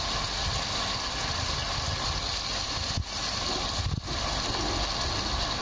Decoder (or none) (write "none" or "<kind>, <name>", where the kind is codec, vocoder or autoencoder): none